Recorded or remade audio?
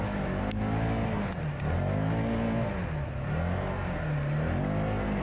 recorded